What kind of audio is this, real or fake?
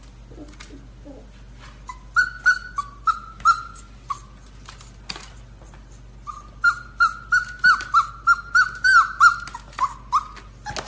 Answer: real